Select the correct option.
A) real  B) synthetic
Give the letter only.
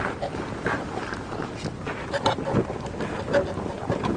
A